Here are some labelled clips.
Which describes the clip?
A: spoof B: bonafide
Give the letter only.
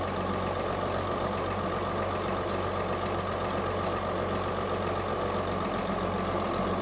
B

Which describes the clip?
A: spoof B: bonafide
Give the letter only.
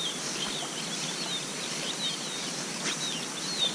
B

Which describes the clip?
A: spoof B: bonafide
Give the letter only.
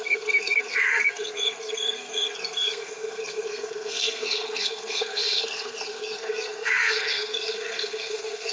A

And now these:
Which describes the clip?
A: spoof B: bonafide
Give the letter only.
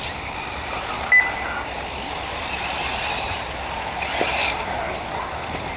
B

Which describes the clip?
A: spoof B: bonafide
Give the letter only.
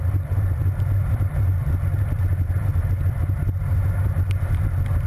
B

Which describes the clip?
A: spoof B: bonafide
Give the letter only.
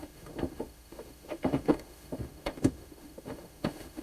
A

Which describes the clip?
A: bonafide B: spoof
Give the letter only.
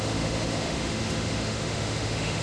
B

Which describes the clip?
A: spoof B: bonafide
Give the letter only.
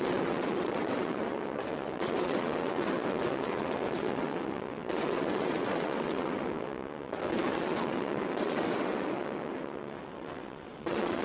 A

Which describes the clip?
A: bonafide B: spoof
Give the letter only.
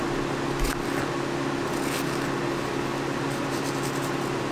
A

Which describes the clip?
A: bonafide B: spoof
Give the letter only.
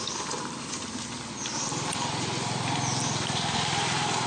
B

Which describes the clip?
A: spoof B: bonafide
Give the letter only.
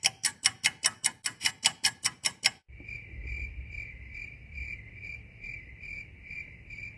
B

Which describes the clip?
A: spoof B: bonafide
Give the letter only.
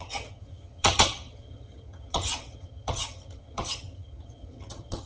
A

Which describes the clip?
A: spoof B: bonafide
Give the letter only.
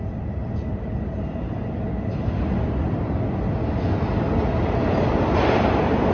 B